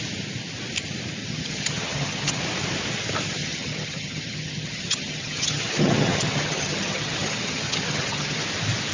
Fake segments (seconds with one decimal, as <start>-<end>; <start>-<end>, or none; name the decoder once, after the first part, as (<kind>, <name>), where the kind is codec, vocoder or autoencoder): 1.2-2.4 (vocoder, HiFi-GAN); 3.4-8.4